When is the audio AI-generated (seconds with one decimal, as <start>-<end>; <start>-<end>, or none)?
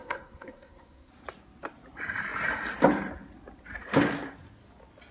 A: 0.0-1.1